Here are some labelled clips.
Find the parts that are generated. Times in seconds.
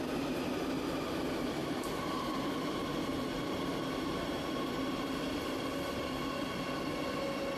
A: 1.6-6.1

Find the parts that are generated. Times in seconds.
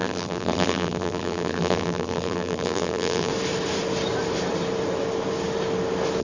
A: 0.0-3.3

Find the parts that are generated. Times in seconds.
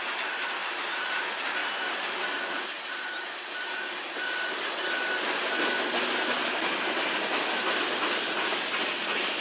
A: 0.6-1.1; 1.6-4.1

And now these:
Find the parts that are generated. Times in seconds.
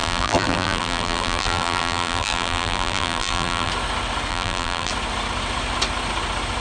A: 0.0-3.7; 4.3-4.9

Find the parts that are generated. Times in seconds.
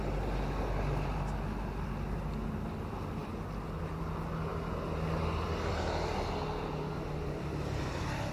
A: none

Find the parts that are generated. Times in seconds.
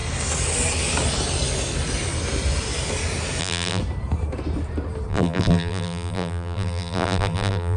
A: 3.4-3.8; 5.1-7.8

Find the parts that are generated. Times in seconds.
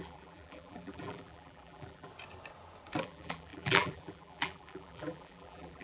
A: 0.0-2.1; 3.0-5.8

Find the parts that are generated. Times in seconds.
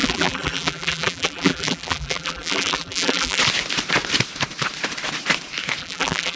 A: 0.0-3.4; 5.8-6.4